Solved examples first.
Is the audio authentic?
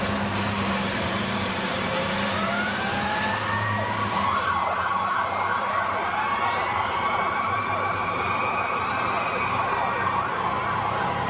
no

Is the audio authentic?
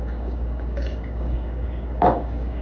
no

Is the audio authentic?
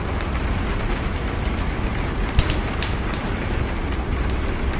yes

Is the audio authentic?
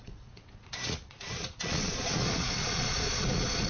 no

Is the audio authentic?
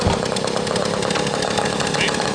yes